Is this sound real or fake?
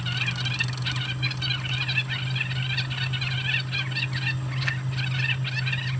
real